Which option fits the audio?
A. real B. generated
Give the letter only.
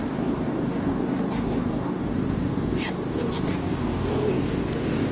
B